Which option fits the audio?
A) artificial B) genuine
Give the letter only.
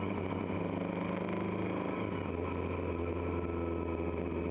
B